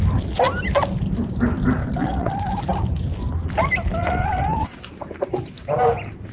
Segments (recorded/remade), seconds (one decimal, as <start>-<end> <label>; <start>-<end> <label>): 0.0-1.8 recorded; 1.8-2.4 remade; 2.4-4.0 recorded; 4.0-4.8 remade; 4.8-6.3 recorded